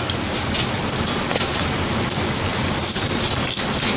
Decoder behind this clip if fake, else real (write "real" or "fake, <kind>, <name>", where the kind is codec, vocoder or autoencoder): real